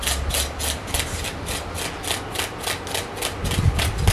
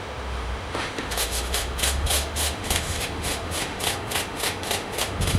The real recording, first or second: first